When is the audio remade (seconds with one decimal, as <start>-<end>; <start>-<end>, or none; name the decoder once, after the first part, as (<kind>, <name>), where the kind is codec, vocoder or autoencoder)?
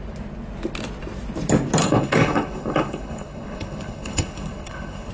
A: 1.8-5.1 (codec, HILCodec)